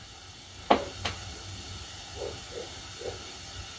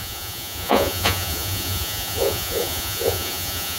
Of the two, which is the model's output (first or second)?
second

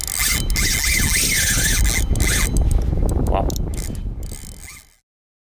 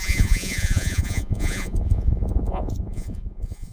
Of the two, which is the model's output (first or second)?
second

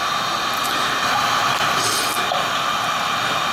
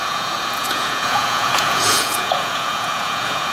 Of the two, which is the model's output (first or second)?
second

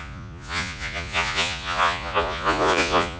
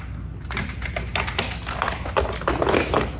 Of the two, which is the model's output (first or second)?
first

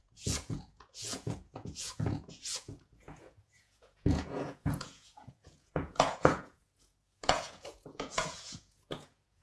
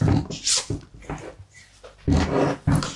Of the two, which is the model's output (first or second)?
first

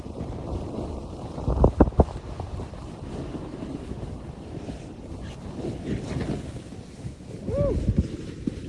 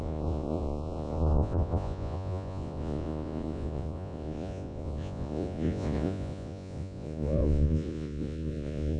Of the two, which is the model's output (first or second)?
second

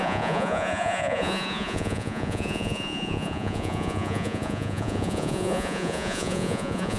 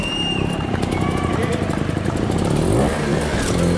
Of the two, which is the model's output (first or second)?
first